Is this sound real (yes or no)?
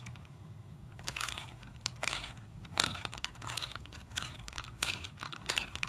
no